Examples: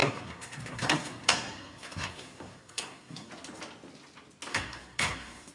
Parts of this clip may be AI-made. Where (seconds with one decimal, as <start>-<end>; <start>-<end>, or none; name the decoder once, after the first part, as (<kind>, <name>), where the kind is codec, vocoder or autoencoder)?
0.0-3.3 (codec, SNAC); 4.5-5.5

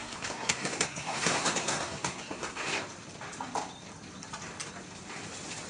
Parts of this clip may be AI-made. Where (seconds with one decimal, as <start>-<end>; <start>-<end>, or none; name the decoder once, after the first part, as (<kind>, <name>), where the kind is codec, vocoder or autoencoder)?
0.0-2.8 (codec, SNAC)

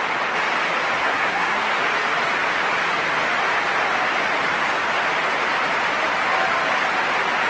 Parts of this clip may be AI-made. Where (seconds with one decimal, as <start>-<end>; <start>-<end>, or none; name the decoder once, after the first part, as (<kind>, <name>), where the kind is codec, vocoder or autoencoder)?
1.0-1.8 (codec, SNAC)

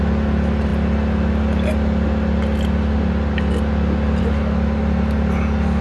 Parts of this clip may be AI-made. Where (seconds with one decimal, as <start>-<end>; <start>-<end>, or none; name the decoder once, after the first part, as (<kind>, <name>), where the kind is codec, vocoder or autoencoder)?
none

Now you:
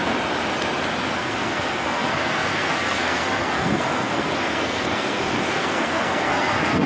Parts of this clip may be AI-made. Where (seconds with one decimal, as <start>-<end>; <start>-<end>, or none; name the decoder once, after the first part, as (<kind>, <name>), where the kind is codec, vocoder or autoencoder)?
1.2-6.9 (codec, SNAC)

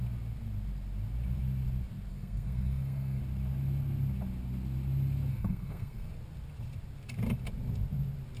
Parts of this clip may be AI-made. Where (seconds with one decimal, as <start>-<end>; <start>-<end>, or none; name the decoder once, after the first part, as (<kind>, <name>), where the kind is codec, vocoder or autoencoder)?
2.1-3.2 (codec, SNAC); 5.3-6.1

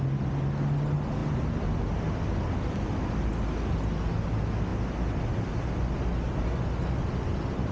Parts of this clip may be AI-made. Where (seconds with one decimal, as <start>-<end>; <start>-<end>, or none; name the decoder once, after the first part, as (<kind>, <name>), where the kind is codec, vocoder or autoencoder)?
none